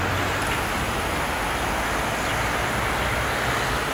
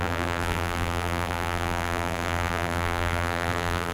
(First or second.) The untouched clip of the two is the first